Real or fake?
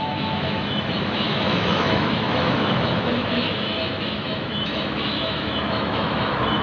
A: fake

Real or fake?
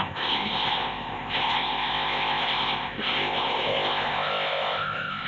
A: fake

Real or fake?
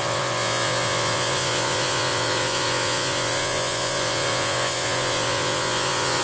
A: fake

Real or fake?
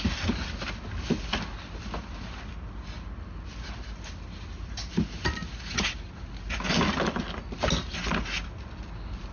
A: real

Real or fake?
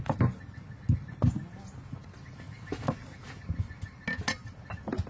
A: real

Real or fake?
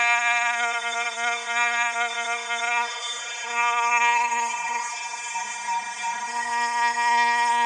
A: fake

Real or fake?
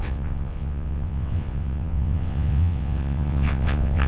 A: fake